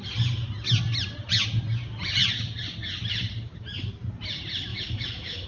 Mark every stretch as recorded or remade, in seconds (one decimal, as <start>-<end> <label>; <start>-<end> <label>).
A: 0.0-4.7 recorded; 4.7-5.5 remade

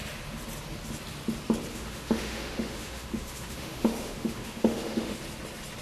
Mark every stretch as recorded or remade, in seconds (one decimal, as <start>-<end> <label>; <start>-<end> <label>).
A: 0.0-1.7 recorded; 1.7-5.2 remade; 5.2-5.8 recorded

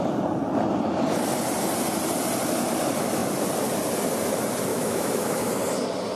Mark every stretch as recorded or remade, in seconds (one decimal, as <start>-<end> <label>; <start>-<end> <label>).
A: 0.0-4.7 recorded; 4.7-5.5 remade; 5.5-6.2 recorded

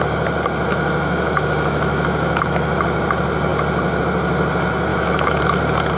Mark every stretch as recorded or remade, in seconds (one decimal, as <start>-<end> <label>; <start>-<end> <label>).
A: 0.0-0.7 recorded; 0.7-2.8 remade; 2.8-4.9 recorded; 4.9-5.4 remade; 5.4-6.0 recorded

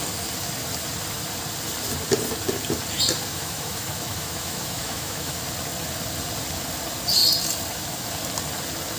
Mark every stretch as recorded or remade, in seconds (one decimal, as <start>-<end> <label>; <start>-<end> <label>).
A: 0.0-3.3 recorded; 3.3-5.4 remade; 5.4-9.0 recorded

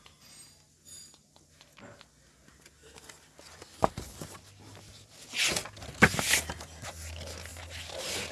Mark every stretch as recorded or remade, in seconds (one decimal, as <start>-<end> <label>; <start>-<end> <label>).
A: 0.0-8.3 recorded